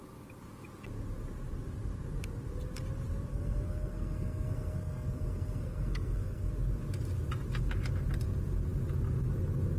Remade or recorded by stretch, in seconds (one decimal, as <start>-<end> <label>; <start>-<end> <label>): 0.0-3.3 recorded; 3.3-6.5 remade; 6.5-9.8 recorded